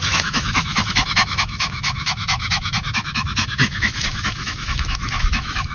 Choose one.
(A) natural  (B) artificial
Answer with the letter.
B